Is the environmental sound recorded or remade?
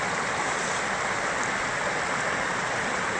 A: recorded